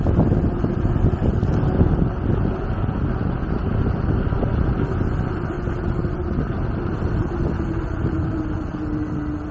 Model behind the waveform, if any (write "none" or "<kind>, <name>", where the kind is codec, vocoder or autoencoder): none